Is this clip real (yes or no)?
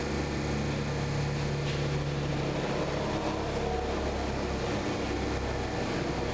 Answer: yes